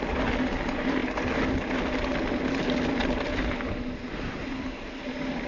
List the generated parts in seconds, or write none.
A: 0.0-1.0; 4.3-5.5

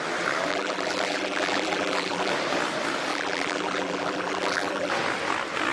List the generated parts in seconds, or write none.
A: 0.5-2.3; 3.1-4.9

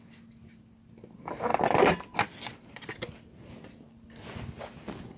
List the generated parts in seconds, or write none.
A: none